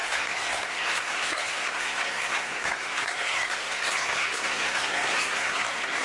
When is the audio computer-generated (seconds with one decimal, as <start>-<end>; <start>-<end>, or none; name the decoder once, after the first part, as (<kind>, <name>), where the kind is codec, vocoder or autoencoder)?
0.0-6.0 (codec, SNAC)